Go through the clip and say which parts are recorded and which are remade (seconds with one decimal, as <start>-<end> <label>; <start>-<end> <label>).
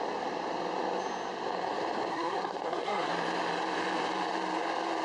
0.0-2.1 recorded; 2.1-3.1 remade; 3.1-5.0 recorded